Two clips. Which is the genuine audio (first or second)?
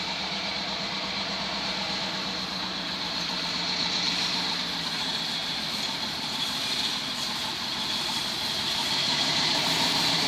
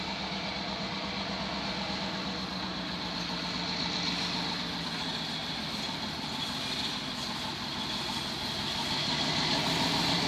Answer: second